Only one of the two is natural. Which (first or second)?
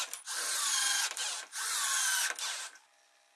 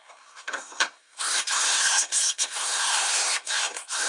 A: first